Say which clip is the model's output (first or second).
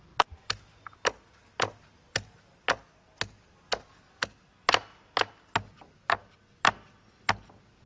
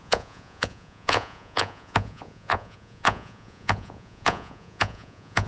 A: second